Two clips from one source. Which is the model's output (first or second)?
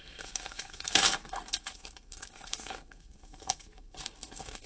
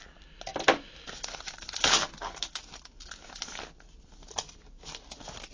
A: first